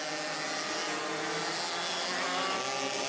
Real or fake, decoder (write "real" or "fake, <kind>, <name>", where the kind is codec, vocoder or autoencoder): real